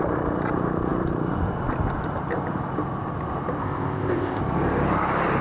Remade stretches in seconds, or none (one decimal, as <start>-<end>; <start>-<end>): 3.6-4.4